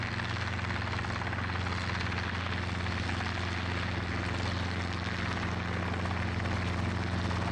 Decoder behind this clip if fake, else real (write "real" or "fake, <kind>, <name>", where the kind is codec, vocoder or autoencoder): real